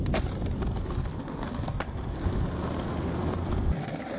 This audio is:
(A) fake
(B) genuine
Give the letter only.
B